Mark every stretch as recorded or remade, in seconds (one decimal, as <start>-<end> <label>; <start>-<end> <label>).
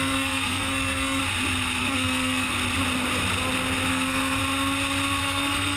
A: 0.0-1.2 remade; 1.2-1.8 recorded; 1.8-2.6 remade; 2.6-3.9 recorded; 3.9-4.4 remade; 4.4-5.2 recorded; 5.2-5.8 remade